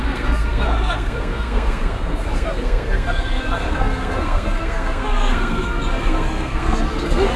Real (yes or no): no